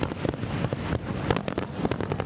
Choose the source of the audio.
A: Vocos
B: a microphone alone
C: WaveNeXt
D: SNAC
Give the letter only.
B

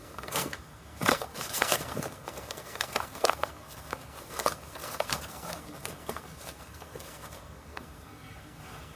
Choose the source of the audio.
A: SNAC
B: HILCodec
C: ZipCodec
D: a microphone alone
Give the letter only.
A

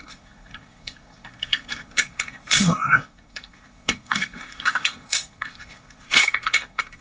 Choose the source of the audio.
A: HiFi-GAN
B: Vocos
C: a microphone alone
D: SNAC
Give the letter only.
D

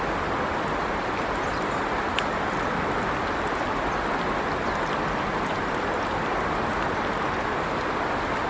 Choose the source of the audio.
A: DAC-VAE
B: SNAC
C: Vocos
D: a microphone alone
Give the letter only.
D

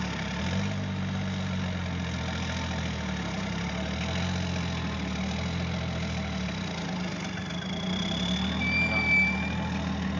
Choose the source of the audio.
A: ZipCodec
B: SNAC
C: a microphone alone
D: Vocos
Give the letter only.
C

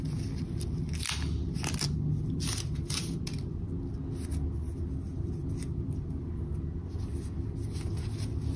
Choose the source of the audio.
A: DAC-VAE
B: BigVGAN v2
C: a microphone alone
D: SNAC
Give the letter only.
C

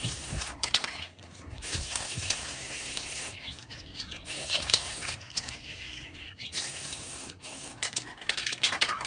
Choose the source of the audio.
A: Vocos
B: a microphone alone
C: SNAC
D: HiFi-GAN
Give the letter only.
C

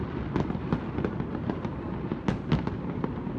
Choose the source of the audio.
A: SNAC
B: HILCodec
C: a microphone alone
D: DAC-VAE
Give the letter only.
C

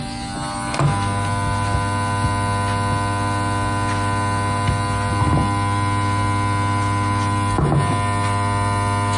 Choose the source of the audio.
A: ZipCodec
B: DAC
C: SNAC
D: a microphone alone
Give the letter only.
D